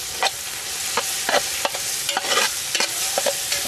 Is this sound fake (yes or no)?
no